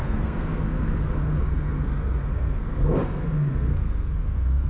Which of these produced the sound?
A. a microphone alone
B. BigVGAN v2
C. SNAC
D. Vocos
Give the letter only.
C